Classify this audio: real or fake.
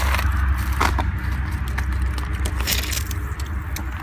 real